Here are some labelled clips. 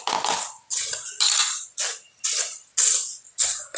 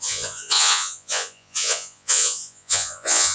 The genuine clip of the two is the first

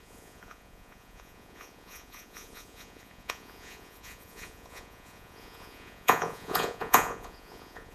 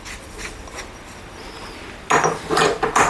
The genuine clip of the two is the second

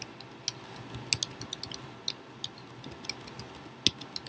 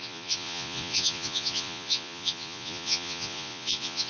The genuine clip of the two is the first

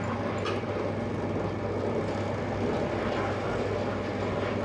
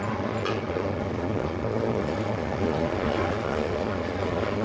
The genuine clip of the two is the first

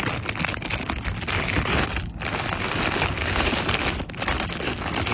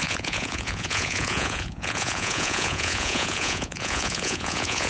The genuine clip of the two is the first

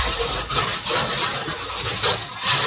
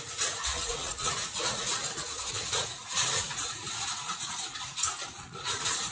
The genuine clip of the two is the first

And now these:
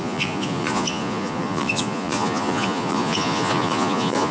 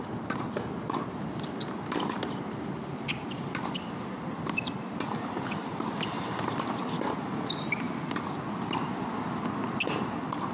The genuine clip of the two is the second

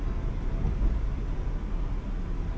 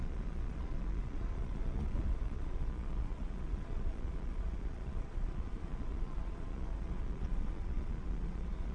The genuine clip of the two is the first